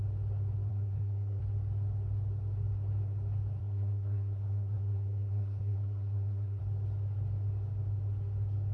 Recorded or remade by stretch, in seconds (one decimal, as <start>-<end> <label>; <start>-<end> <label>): 0.0-0.7 recorded; 0.7-1.4 remade; 1.4-3.6 recorded; 3.6-6.6 remade; 6.6-8.7 recorded